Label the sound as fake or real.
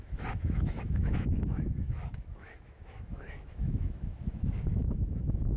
fake